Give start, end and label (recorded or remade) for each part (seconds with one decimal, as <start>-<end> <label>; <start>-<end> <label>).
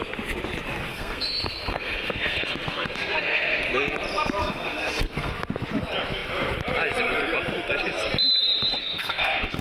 0.0-0.9 recorded; 0.9-3.6 remade; 3.6-4.4 recorded; 4.4-5.3 remade; 5.3-8.8 recorded; 8.8-9.6 remade